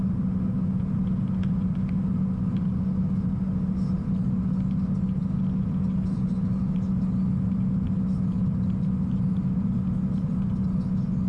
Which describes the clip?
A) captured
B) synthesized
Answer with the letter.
A